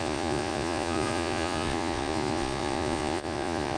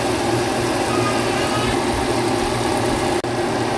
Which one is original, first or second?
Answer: second